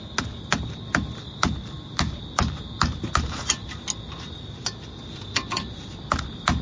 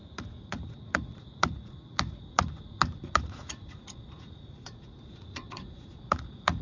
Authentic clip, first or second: first